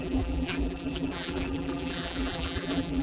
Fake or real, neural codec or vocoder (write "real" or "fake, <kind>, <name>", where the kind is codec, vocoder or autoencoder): fake, vocoder, BigVGAN v2